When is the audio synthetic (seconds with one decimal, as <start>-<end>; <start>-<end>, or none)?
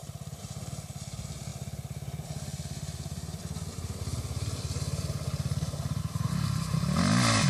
none